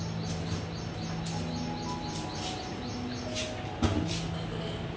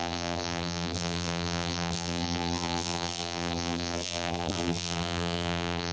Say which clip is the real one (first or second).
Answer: first